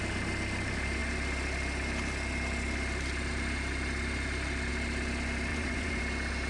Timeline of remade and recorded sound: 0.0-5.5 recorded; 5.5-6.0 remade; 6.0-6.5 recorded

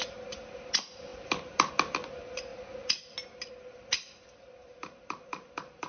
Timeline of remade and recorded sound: 0.0-1.1 recorded; 1.1-1.7 remade; 1.7-4.6 recorded; 4.6-5.9 remade

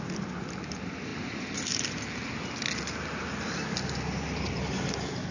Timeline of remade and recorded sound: 0.0-5.3 recorded

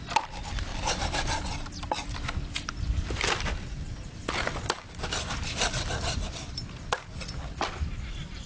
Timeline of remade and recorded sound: 0.0-8.5 recorded

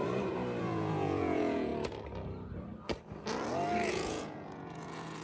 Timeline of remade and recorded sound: 0.0-0.6 recorded; 0.6-1.7 remade; 1.7-3.9 recorded; 3.9-5.2 remade

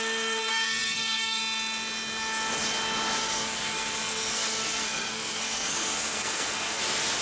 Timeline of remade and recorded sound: 0.0-0.5 recorded; 0.5-1.4 remade; 1.4-3.2 recorded; 3.2-6.8 remade; 6.8-7.2 recorded